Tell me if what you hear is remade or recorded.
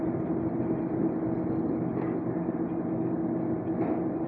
recorded